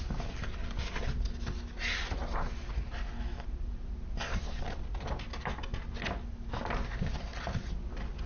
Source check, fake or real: real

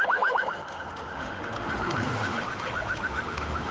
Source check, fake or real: fake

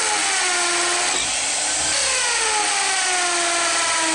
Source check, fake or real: real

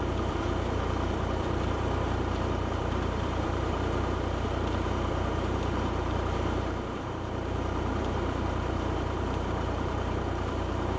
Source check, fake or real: fake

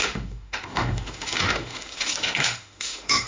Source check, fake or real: fake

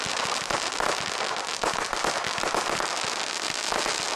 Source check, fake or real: real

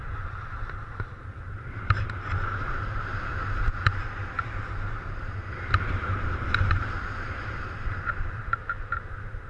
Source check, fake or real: fake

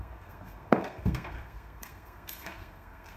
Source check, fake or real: fake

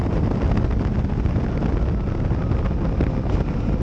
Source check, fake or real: real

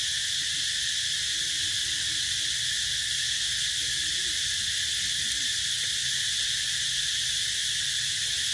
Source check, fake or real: real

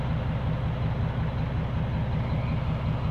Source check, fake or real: real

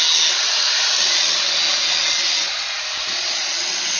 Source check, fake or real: real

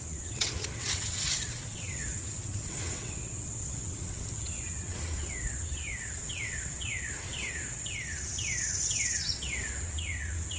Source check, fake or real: fake